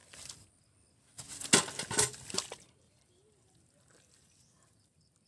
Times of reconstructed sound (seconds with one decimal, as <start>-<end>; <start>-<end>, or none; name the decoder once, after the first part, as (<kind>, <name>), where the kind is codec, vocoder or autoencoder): none